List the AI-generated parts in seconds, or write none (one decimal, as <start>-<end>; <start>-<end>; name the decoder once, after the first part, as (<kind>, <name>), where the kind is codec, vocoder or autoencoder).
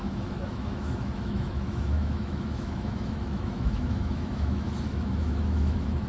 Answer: 0.0-6.1 (autoencoder, DAC-VAE)